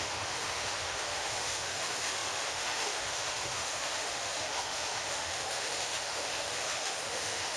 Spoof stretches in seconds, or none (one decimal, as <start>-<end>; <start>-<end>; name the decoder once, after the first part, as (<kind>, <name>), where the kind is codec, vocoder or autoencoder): 0.0-7.6 (autoencoder, DAC-VAE)